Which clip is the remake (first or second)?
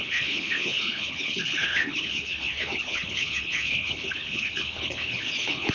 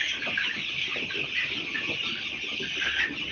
first